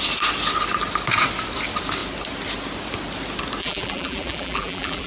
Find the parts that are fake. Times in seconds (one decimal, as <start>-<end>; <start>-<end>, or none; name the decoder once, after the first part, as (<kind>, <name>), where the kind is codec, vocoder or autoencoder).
3.6-5.1 (vocoder, BigVGAN v2)